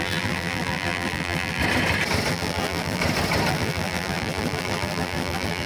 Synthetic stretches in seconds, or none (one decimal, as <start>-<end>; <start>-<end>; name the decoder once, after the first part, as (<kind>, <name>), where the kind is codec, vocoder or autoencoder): 0.0-1.6 (vocoder, BigVGAN v2); 2.3-3.0; 3.5-5.7

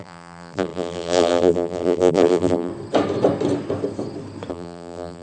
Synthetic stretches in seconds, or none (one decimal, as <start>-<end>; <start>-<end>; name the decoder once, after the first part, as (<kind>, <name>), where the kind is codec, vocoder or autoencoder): 0.0-2.7 (vocoder, BigVGAN v2); 4.5-5.2

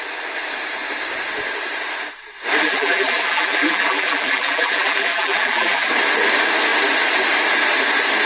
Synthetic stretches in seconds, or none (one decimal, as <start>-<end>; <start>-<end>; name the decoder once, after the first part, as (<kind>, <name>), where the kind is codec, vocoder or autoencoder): 2.6-5.9 (vocoder, BigVGAN v2)

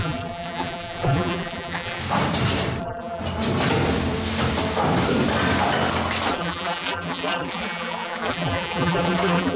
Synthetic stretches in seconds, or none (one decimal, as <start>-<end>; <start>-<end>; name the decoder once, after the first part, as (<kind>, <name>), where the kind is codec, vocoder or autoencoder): 0.0-2.0 (vocoder, BigVGAN v2); 2.8-3.2; 6.3-9.6

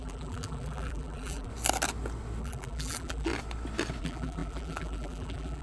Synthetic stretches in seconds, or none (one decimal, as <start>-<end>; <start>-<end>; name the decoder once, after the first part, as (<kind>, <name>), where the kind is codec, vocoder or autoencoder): 0.0-1.5 (vocoder, BigVGAN v2); 2.4-3.3; 4.0-5.6

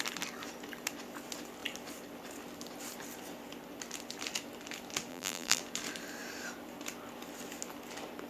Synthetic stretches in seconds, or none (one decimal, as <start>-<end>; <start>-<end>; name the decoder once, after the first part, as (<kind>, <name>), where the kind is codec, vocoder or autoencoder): 5.1-5.6 (vocoder, BigVGAN v2)

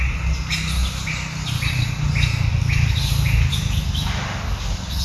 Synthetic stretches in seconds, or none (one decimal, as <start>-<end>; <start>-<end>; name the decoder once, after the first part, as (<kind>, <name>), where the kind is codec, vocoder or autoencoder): none